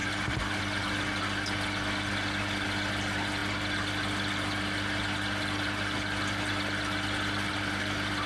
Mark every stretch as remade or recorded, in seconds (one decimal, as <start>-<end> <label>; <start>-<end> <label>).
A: 0.0-8.3 remade